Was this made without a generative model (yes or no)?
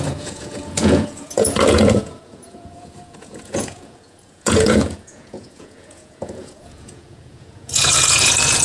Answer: no